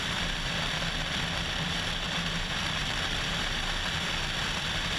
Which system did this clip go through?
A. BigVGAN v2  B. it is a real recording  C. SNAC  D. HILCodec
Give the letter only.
A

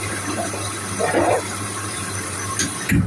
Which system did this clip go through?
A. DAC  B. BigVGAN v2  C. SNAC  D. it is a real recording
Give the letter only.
B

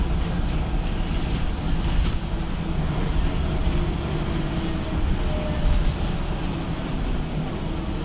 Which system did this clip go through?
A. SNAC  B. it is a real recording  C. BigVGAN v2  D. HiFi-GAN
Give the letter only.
B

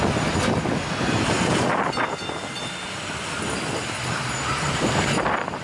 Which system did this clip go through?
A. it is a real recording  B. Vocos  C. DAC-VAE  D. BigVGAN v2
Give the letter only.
D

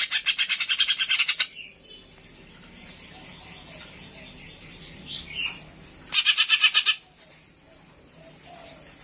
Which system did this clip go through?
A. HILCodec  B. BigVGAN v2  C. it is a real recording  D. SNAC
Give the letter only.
C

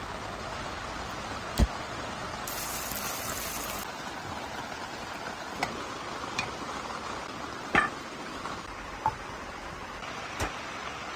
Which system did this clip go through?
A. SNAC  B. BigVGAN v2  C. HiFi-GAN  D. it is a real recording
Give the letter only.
D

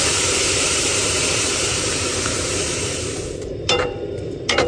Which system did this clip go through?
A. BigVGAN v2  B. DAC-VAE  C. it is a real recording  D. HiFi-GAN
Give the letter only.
A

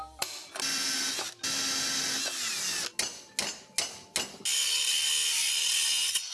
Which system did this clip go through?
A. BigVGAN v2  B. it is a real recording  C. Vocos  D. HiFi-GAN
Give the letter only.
B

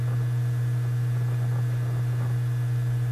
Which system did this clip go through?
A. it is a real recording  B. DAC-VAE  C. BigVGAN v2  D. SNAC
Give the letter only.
A